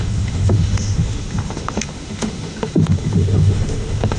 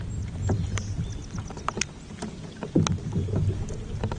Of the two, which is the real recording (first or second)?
second